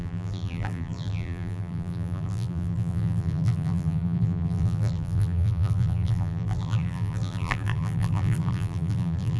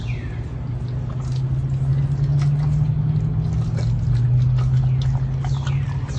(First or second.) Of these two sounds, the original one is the second